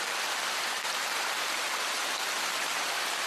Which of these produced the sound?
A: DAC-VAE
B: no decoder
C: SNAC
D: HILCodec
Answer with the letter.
B